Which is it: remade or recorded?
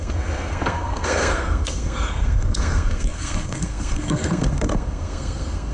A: remade